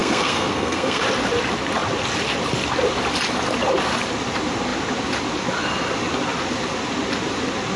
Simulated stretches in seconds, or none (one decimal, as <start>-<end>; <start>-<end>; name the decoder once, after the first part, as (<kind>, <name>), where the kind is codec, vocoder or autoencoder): 0.0-1.0 (codec, SNAC)